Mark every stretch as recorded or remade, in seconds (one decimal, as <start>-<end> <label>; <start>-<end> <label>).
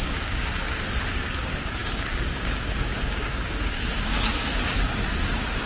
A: 0.0-4.5 remade; 4.5-5.2 recorded; 5.2-5.7 remade